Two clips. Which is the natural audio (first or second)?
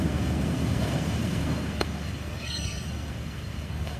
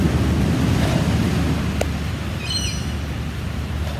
second